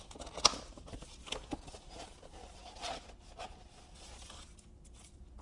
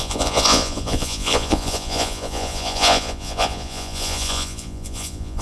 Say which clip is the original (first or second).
first